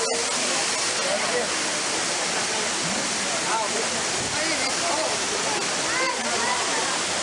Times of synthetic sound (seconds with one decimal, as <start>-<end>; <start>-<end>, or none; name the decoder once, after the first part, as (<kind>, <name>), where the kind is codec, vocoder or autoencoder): none